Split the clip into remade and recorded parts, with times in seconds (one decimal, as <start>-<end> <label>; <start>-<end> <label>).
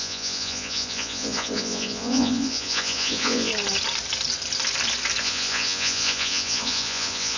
0.0-3.5 remade; 3.5-5.2 recorded; 5.2-7.4 remade